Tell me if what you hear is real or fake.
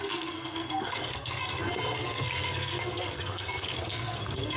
fake